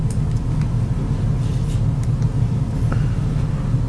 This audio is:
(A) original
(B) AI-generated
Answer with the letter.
A